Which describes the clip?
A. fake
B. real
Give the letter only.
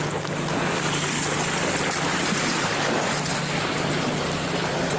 B